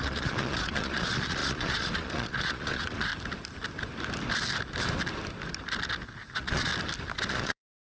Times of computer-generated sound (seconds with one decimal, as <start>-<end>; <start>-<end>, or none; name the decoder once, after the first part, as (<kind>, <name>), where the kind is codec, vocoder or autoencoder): 0.0-3.1 (vocoder, Vocos); 6.3-6.7; 7.3-8.0